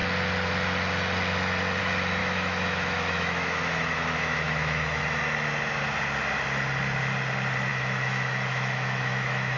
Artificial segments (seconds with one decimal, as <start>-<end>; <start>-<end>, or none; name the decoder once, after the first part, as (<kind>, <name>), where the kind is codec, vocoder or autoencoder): 2.2-5.0 (autoencoder, DAC-VAE); 7.7-9.6